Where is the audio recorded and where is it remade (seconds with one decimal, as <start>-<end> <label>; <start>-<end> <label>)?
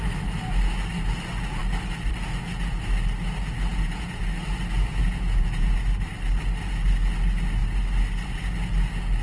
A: 0.0-3.7 recorded; 3.7-4.2 remade; 4.2-5.0 recorded; 5.0-5.8 remade; 5.8-9.2 recorded